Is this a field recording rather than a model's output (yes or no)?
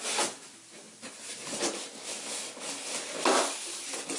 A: yes